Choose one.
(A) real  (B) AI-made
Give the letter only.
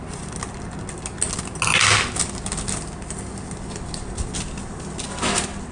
A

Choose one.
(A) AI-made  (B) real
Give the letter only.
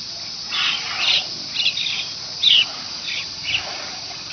A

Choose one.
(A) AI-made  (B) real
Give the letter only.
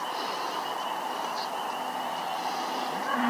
B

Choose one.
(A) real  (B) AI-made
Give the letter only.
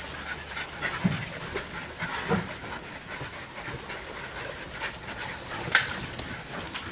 A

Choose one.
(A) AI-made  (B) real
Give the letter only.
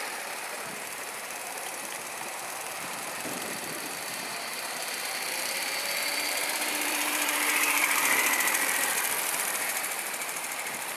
A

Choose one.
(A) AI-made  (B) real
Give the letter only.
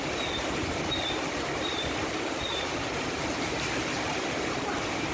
A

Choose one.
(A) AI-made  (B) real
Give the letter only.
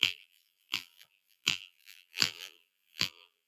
A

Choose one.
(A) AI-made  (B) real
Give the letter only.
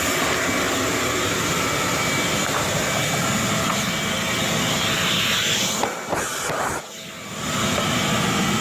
B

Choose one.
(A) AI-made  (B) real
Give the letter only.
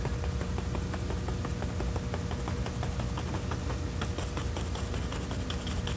B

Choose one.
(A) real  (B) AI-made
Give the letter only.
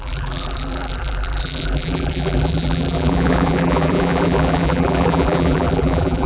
B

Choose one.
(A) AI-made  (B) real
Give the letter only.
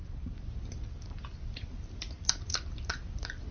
A